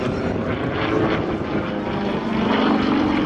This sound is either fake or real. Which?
real